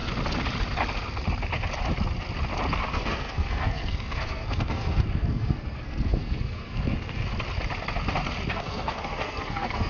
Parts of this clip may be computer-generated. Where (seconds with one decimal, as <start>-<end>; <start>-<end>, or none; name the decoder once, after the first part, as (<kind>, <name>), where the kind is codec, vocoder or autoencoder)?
2.9-7.3 (codec, SNAC); 8.5-9.9